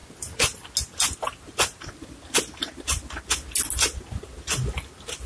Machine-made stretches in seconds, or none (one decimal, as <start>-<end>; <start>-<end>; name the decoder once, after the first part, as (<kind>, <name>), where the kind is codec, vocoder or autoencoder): none